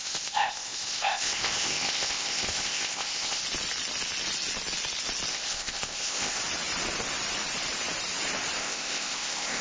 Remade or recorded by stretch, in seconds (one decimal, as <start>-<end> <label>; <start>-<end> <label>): 0.0-3.4 remade; 3.4-5.3 recorded; 5.3-6.4 remade; 6.4-8.6 recorded; 8.6-9.6 remade